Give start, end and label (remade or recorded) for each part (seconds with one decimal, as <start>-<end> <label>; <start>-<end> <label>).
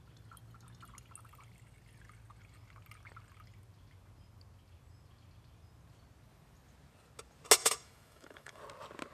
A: 0.0-7.6 recorded; 7.6-8.6 remade; 8.6-9.1 recorded